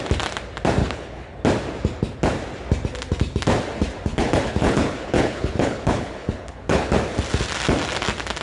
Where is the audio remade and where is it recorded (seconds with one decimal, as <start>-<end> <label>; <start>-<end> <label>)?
0.0-0.8 recorded; 0.8-1.4 remade; 1.4-4.1 recorded; 4.1-6.9 remade; 6.9-8.4 recorded